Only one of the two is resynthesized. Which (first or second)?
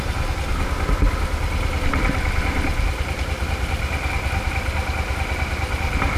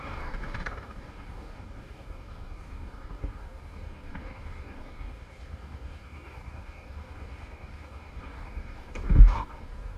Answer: second